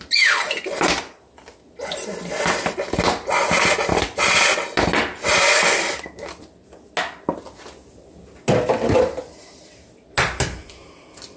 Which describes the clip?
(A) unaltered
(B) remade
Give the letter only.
A